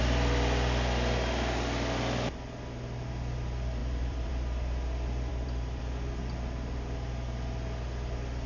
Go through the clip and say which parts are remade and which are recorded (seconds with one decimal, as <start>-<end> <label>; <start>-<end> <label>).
0.0-3.8 recorded; 3.8-4.3 remade; 4.3-5.3 recorded; 5.3-5.8 remade; 5.8-8.5 recorded